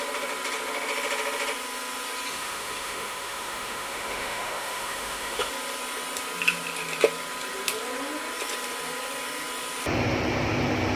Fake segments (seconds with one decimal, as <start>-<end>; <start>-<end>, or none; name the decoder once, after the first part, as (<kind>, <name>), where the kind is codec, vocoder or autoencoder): 2.3-5.5 (autoencoder, DAC-VAE)